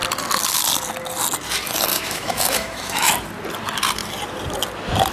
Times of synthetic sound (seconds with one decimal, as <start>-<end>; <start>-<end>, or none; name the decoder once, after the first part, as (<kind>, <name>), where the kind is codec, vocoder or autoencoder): 1.9-3.1 (autoencoder, DAC-VAE)